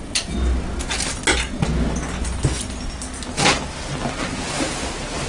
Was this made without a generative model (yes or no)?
yes